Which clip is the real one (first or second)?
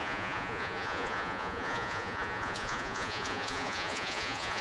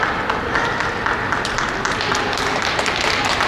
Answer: second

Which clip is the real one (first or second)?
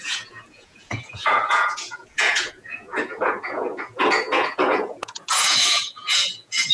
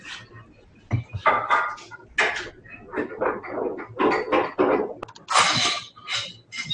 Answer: second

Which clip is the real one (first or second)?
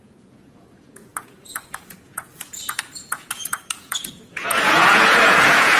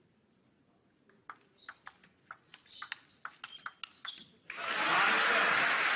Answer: second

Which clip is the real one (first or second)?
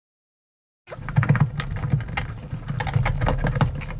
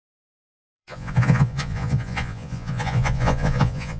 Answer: first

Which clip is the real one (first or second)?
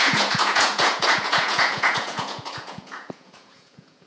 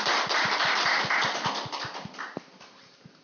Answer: second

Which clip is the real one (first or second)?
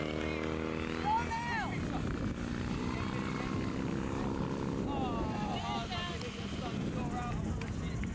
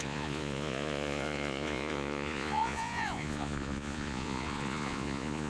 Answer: first